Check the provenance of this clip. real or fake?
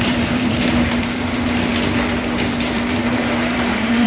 fake